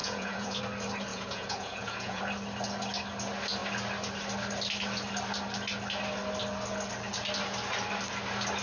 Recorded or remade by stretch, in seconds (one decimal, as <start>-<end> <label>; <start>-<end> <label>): 0.0-0.6 remade; 0.6-1.1 recorded; 1.1-2.2 remade; 2.2-8.6 recorded

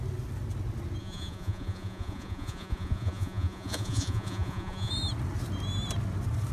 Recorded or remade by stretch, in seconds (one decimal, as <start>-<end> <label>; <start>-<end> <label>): 0.0-1.0 recorded; 1.0-4.9 remade; 4.9-6.5 recorded

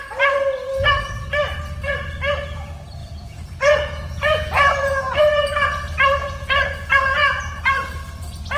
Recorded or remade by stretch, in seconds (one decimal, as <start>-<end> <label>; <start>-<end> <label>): 0.0-3.0 recorded; 3.0-5.2 remade; 5.2-6.2 recorded; 6.2-7.6 remade; 7.6-8.6 recorded

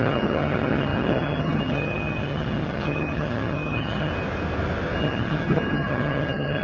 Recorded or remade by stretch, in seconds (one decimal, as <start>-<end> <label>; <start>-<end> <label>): 0.0-4.1 remade; 4.1-5.0 recorded; 5.0-6.6 remade

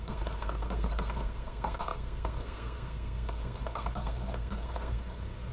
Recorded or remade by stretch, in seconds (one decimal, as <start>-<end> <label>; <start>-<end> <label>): 0.0-5.5 remade

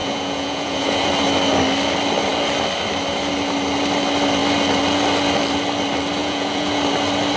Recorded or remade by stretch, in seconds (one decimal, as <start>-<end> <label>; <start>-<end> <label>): 0.0-1.1 remade; 1.1-6.2 recorded; 6.2-6.8 remade; 6.8-7.4 recorded

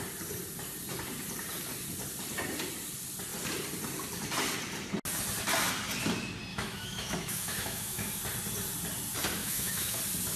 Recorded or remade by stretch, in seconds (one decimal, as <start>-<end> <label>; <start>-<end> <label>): 0.0-6.5 recorded; 6.5-8.2 remade; 8.2-9.4 recorded; 9.4-10.0 remade; 10.0-10.4 recorded

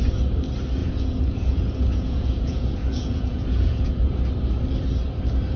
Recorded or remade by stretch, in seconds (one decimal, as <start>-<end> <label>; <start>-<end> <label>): 0.0-0.8 recorded; 0.8-4.2 remade; 4.2-5.6 recorded